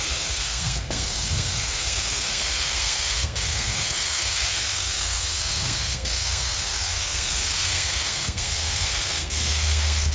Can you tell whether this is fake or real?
fake